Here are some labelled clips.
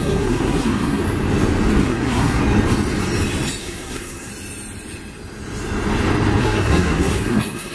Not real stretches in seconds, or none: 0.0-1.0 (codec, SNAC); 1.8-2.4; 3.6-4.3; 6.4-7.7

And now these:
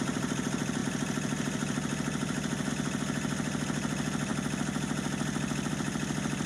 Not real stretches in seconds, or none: none

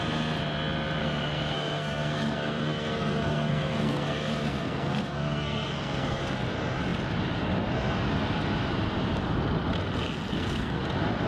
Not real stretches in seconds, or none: 1.0-6.2 (codec, SNAC); 10.3-10.8

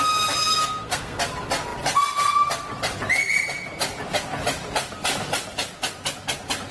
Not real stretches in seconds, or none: 0.5-1.2 (codec, SNAC)

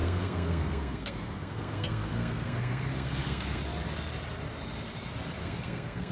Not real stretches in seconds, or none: 0.0-3.6 (codec, SNAC); 5.4-6.1

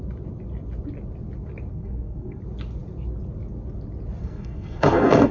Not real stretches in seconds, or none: 1.7-2.4 (codec, SNAC); 4.2-5.3

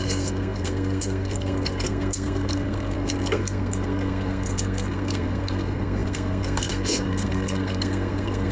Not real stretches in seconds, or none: 0.0-8.5 (codec, SNAC)

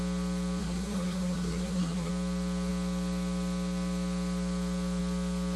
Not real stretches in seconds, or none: 0.6-2.1 (codec, SNAC)